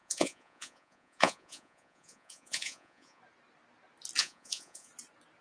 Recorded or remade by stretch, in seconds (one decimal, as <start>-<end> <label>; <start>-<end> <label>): 0.0-3.2 remade; 3.2-4.2 recorded; 4.2-4.9 remade; 4.9-5.4 recorded